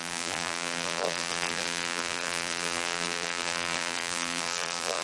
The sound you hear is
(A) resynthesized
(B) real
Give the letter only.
A